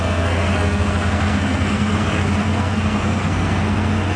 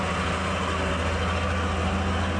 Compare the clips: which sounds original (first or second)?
second